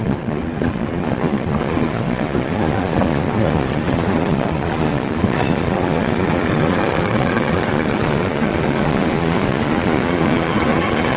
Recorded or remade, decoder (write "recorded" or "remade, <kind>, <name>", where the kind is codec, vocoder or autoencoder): remade, vocoder, Vocos